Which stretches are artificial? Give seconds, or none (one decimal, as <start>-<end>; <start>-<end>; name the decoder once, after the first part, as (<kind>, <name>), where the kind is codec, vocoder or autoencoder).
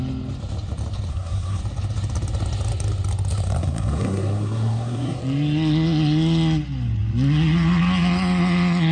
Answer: 1.1-1.6 (codec, SNAC); 3.6-5.2